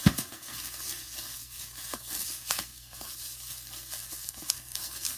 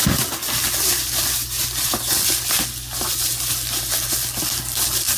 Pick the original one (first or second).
second